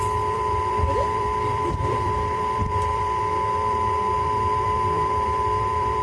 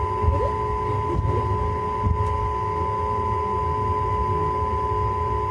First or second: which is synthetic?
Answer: first